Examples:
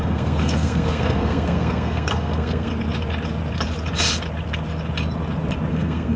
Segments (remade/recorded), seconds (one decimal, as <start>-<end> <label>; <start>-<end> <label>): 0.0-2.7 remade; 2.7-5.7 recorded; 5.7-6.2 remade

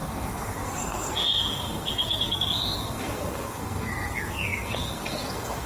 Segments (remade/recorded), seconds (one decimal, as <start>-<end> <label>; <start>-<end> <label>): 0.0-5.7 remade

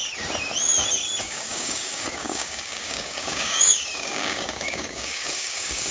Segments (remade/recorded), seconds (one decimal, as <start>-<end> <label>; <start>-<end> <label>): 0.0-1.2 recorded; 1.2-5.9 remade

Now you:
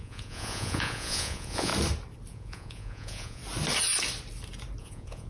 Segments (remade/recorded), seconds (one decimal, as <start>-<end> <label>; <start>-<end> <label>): 0.0-1.7 remade; 1.7-2.3 recorded; 2.3-3.4 remade; 3.4-4.8 recorded; 4.8-5.3 remade

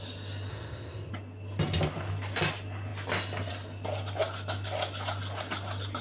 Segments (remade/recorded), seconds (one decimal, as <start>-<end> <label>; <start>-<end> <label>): 0.0-0.5 recorded; 0.5-1.1 remade; 1.1-6.0 recorded

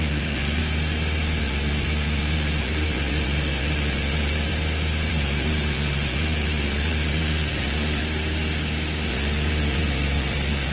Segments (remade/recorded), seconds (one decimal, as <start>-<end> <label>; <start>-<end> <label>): 0.0-0.6 remade; 0.6-1.4 recorded; 1.4-4.5 remade; 4.5-5.1 recorded; 5.1-8.0 remade; 8.0-9.1 recorded; 9.1-10.7 remade

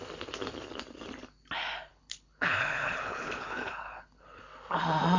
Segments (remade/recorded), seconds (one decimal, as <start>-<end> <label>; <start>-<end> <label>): 0.0-1.9 recorded; 1.9-4.4 remade; 4.4-5.2 recorded